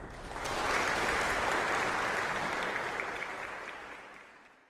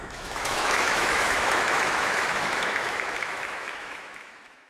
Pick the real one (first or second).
first